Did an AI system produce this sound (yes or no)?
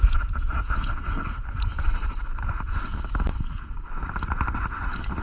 no